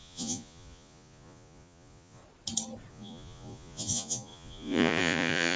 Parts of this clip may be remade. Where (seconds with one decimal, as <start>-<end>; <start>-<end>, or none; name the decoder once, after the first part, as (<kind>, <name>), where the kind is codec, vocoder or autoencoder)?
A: 0.0-2.2 (vocoder, Vocos); 2.9-5.6

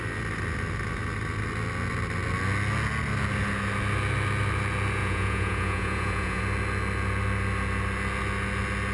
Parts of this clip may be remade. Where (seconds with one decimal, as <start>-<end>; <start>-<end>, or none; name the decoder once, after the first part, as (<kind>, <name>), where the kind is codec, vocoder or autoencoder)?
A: 5.0-6.4 (vocoder, Vocos)

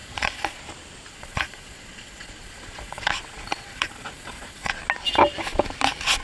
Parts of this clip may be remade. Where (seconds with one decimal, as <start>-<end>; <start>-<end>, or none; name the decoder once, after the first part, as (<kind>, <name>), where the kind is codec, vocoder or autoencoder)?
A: 0.0-0.6 (vocoder, Vocos); 1.1-4.8

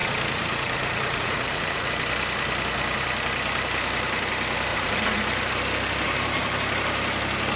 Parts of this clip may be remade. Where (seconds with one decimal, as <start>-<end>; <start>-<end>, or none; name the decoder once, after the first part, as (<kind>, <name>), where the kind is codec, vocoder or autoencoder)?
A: 0.0-1.9 (vocoder, Vocos); 4.7-5.2

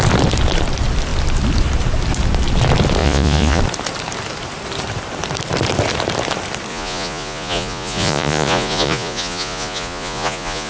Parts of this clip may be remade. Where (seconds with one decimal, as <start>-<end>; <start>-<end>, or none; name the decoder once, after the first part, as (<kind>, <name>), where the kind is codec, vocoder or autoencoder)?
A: 3.0-3.6 (vocoder, Vocos); 6.7-10.7

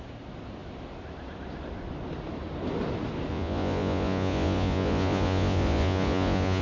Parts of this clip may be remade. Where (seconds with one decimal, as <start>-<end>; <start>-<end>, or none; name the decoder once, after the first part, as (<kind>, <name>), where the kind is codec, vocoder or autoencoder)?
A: 3.3-6.6 (vocoder, Vocos)

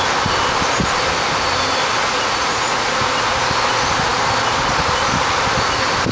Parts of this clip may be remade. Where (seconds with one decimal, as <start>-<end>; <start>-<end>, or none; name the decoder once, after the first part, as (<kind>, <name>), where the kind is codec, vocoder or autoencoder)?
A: 2.0-3.1 (vocoder, Vocos)

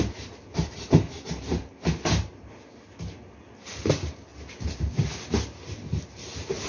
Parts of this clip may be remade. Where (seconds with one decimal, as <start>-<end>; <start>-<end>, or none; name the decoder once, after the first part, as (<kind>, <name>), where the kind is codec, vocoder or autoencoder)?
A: none